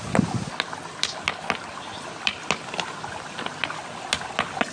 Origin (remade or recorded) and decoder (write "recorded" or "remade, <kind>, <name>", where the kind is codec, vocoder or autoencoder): recorded